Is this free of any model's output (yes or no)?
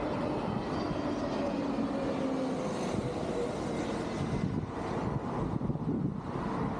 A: yes